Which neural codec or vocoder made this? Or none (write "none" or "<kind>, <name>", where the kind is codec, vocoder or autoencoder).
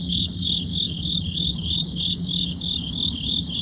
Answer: codec, HILCodec